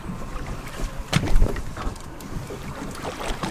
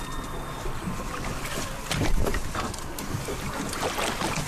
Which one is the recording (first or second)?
second